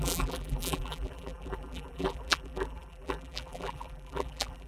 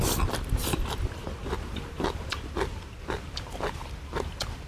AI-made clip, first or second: first